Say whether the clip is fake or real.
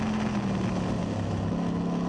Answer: real